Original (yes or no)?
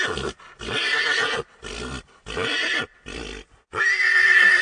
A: yes